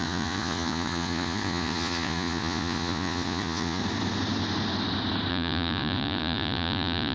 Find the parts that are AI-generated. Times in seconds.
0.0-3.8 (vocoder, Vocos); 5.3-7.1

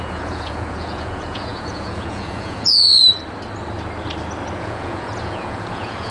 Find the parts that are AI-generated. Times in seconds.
0.0-2.9 (vocoder, Vocos); 4.6-6.1

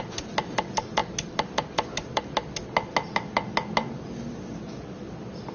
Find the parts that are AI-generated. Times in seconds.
none